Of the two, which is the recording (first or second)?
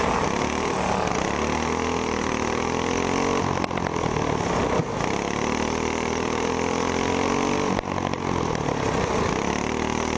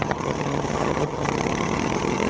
first